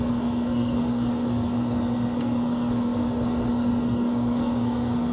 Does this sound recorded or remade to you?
remade